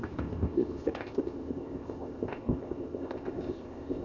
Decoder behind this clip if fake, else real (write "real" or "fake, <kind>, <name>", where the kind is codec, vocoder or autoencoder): fake, codec, ZipCodec